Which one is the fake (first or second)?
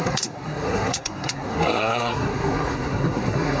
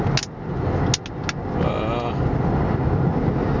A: first